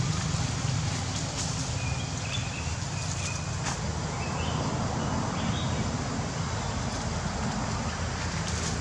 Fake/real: real